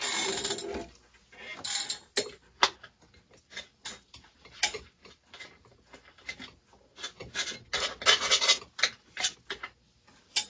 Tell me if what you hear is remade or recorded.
recorded